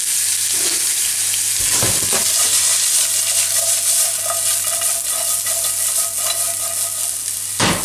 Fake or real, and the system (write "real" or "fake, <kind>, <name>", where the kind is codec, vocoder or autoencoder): real